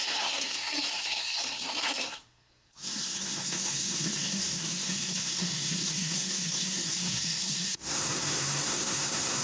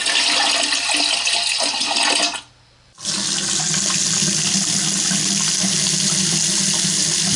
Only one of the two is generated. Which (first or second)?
first